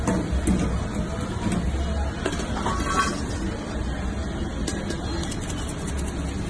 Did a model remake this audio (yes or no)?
no